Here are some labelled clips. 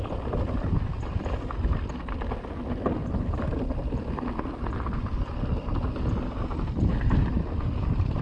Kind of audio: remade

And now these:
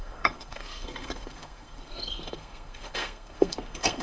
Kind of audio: remade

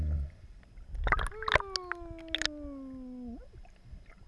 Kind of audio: recorded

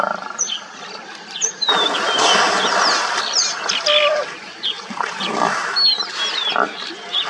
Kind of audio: recorded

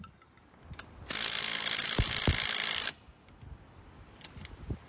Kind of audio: recorded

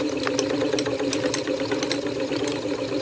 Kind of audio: recorded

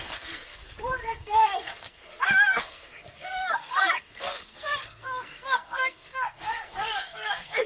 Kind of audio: remade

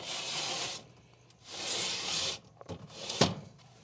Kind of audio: recorded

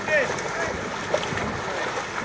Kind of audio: recorded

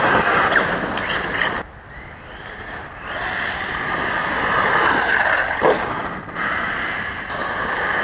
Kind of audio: recorded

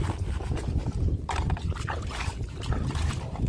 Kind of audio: recorded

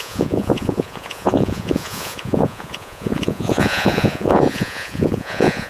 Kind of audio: remade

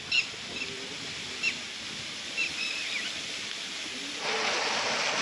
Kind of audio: recorded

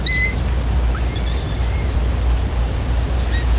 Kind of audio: recorded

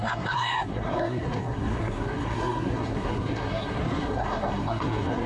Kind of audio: remade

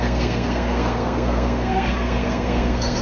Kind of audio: remade